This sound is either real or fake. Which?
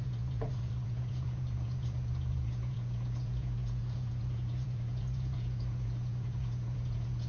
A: fake